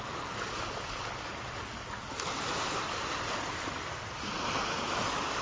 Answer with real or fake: real